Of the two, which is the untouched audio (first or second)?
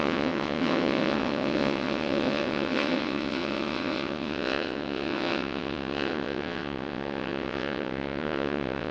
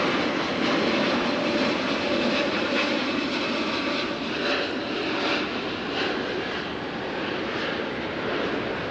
second